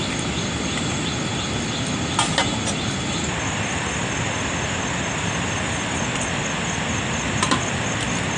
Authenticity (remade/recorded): recorded